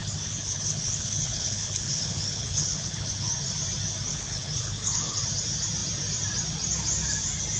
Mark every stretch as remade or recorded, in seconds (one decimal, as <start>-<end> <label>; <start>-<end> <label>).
0.0-3.3 remade; 3.3-4.1 recorded; 4.1-5.2 remade; 5.2-7.6 recorded